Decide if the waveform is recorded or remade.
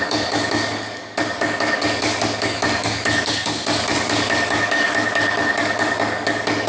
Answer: remade